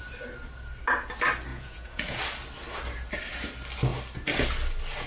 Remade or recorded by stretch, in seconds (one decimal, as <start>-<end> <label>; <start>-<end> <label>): 0.0-1.5 recorded; 1.5-2.2 remade; 2.2-5.1 recorded